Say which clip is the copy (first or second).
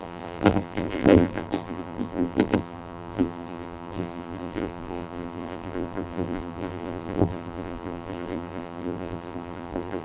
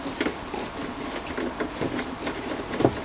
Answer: first